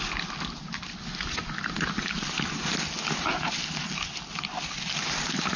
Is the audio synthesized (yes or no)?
no